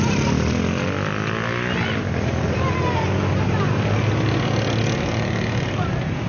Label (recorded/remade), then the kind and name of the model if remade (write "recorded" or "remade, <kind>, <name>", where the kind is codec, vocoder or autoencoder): recorded